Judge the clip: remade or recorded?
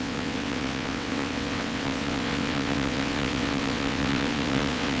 remade